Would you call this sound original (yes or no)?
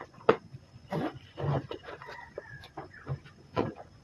no